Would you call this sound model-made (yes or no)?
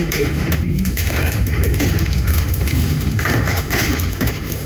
yes